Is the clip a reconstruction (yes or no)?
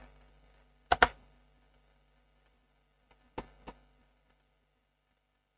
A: no